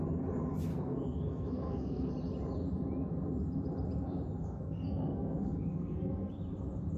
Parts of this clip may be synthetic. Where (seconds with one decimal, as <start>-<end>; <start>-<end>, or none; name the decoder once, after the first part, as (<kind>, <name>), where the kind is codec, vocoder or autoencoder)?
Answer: 0.7-2.1 (codec, SNAC); 4.4-6.3